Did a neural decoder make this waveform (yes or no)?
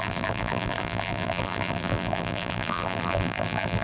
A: yes